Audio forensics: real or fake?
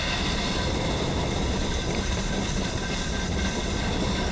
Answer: real